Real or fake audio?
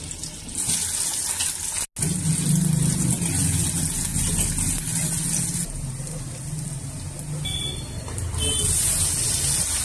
real